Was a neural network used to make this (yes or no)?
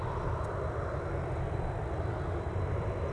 no